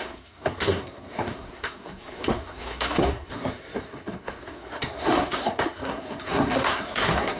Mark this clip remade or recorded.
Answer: remade